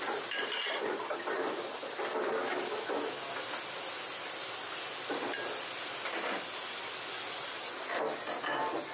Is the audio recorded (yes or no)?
yes